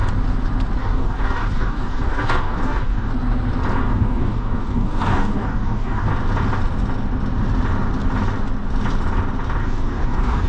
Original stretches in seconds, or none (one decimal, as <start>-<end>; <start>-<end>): 0.0-0.8; 3.1-3.8; 6.1-9.6